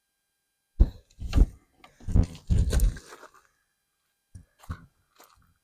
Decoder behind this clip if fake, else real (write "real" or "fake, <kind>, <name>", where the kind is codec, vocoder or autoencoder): real